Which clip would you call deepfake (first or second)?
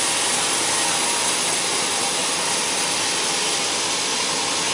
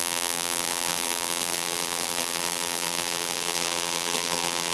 second